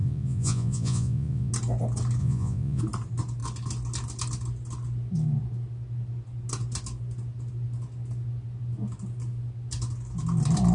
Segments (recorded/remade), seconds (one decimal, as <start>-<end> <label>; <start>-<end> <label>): 0.0-1.5 remade; 1.5-2.2 recorded; 2.2-2.8 remade; 2.8-10.7 recorded